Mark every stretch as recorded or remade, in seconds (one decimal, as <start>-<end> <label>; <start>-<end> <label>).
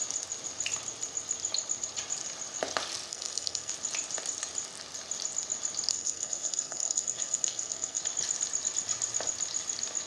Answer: 0.0-3.1 recorded; 3.1-3.7 remade; 3.7-5.9 recorded; 5.9-8.0 remade; 8.0-10.1 recorded